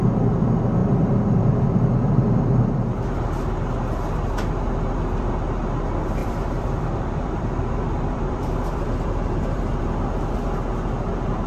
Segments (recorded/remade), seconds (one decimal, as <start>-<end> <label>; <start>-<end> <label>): 0.0-6.2 recorded; 6.2-9.8 remade; 9.8-11.5 recorded